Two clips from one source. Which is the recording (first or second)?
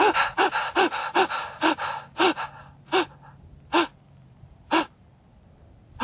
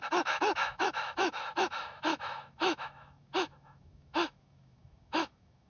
first